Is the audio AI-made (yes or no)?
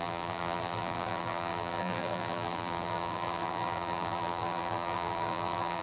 yes